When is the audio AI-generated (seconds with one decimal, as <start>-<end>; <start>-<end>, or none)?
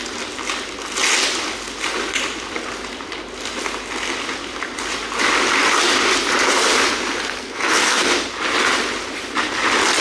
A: 7.4-8.1